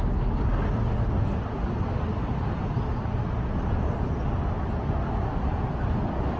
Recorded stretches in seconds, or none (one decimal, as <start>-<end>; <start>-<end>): 0.0-6.4